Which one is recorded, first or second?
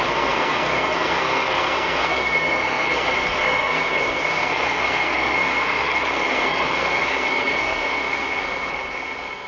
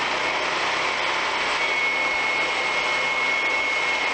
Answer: second